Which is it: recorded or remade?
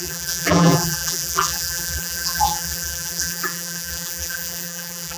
remade